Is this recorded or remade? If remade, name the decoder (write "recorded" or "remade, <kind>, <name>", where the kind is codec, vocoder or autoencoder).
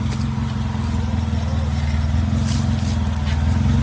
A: recorded